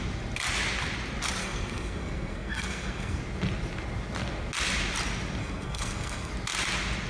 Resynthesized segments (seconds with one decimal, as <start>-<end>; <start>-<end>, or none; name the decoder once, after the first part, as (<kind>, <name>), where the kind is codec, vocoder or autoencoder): 1.4-3.2 (codec, SNAC); 5.4-6.3